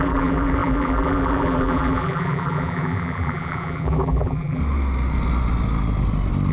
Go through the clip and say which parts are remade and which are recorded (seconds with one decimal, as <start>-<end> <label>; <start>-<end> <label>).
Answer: 0.0-4.6 remade; 4.6-6.5 recorded